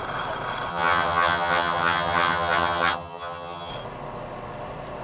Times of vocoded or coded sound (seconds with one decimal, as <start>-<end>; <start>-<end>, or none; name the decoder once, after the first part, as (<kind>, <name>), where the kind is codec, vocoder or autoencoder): 0.7-3.7 (vocoder, HiFi-GAN)